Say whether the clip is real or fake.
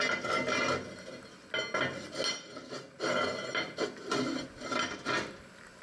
real